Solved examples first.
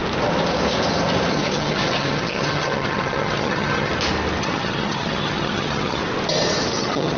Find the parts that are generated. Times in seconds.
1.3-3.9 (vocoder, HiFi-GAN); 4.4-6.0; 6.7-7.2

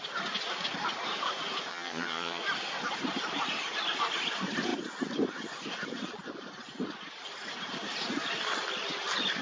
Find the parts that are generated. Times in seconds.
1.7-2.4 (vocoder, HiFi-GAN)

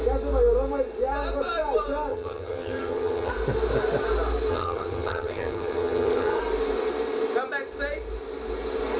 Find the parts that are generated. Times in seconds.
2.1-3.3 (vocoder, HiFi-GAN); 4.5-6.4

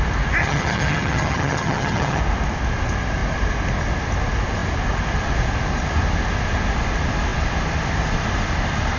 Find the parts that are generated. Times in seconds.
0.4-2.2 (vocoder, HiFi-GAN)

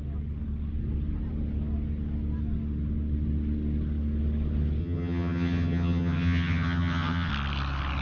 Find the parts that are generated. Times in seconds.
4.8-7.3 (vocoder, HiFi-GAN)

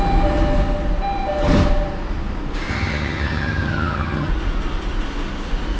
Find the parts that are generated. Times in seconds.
2.7-4.3 (vocoder, HiFi-GAN)